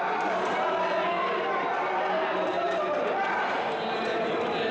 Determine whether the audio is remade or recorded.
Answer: recorded